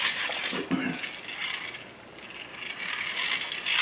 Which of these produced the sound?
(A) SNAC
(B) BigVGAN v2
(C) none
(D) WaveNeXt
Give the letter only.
C